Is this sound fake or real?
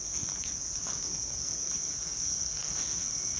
fake